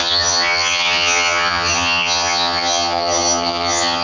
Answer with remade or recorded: remade